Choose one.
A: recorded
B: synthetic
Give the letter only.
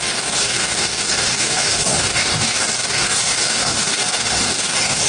B